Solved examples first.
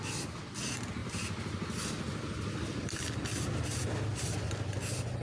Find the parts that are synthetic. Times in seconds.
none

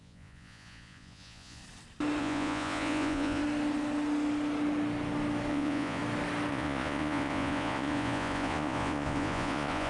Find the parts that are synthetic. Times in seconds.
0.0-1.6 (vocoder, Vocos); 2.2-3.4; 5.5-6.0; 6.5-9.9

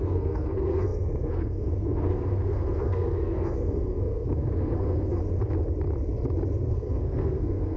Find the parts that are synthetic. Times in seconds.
0.0-5.2 (codec, SNAC); 6.7-7.8

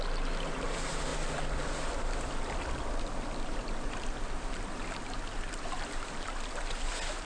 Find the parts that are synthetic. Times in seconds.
none

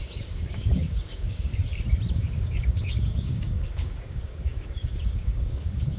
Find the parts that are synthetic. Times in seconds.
0.0-1.5 (codec, DAC); 2.1-6.0